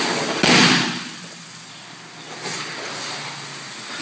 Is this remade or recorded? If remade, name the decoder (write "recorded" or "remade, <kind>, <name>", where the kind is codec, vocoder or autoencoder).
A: recorded